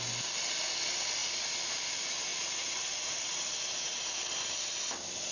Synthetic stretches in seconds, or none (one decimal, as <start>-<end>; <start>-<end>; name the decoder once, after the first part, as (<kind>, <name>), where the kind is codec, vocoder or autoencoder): 2.3-4.2 (vocoder, Vocos)